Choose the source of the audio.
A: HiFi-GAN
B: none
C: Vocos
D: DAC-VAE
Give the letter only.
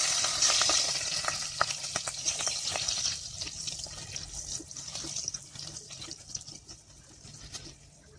B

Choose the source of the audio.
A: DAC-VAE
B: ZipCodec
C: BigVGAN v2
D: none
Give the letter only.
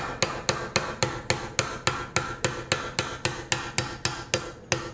D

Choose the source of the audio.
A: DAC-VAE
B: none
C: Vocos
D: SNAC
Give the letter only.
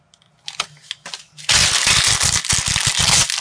B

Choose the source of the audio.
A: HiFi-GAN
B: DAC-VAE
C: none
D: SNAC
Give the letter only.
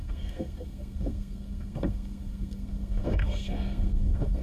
D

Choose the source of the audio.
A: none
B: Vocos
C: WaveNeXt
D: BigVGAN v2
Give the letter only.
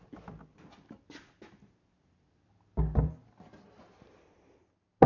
A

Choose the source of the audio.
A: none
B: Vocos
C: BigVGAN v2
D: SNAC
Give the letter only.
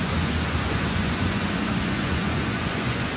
B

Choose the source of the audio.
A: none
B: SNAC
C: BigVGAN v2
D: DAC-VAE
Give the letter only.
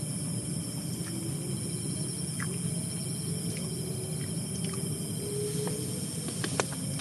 A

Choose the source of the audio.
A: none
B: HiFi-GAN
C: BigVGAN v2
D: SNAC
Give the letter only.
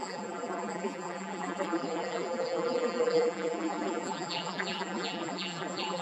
C